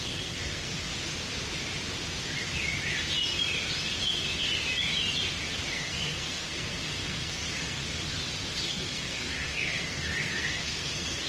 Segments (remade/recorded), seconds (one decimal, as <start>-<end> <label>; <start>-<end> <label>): 0.0-0.9 remade; 0.9-5.7 recorded; 5.7-7.8 remade; 7.8-8.5 recorded; 8.5-11.3 remade